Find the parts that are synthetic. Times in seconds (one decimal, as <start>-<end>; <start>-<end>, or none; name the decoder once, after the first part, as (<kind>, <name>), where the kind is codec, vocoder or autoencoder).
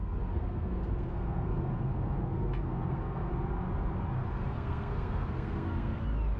0.0-3.3 (codec, SNAC); 4.5-6.0